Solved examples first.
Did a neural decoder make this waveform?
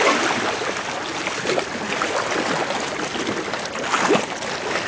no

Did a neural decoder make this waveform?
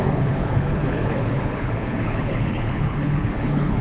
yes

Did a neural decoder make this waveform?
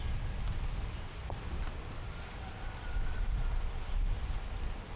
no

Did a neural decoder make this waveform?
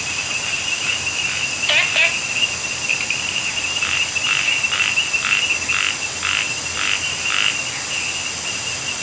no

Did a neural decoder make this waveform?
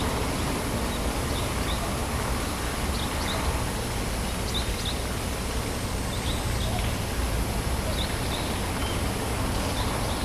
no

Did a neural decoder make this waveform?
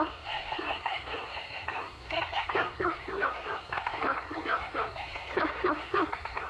yes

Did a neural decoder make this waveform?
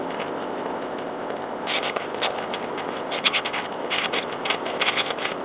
yes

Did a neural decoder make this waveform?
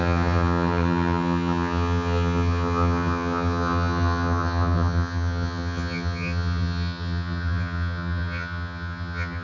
yes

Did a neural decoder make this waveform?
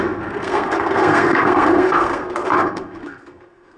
yes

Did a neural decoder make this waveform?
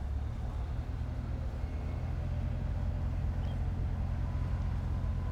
no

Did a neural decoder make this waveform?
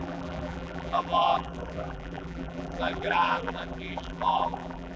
yes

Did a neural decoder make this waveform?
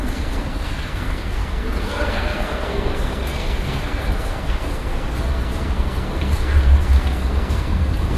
yes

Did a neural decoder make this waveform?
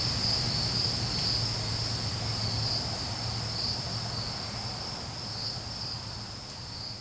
no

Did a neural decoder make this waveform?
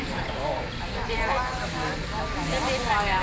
no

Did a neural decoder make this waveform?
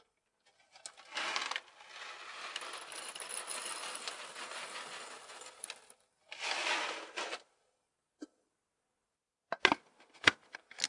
no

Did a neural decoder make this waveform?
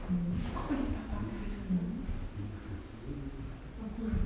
no